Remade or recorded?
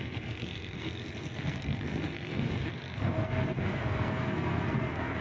remade